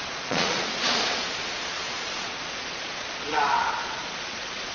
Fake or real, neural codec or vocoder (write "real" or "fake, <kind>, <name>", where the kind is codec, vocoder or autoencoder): fake, vocoder, Vocos